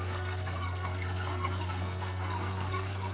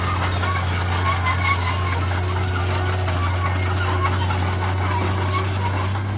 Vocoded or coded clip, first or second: first